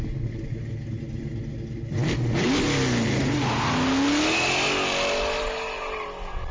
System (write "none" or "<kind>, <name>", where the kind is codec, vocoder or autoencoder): none